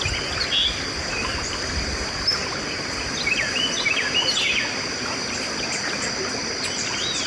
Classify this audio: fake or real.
real